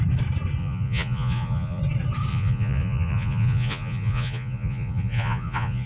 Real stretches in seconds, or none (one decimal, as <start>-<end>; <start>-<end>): 0.0-0.6; 1.8-2.3